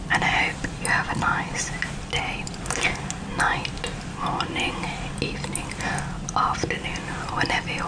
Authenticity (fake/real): real